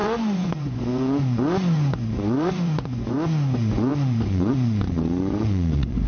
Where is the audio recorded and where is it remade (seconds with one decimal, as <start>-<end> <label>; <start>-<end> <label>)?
0.0-6.1 remade

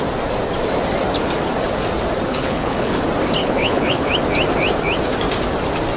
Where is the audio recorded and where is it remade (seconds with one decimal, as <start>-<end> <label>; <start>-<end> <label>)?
0.0-2.3 recorded; 2.3-3.0 remade; 3.0-3.4 recorded; 3.4-4.1 remade; 4.1-6.0 recorded

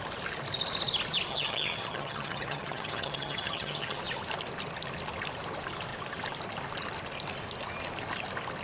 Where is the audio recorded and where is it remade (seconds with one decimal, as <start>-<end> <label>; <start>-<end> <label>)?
0.0-1.3 recorded; 1.3-4.0 remade; 4.0-8.6 recorded

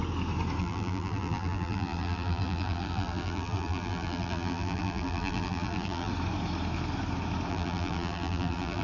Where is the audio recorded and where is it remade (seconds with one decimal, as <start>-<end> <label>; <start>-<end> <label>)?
0.0-0.6 recorded; 0.6-6.1 remade; 6.1-7.5 recorded; 7.5-8.8 remade

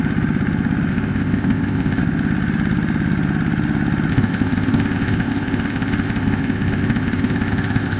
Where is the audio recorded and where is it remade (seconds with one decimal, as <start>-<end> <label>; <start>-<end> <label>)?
0.0-0.9 recorded; 0.9-2.0 remade; 2.0-4.1 recorded; 4.1-8.0 remade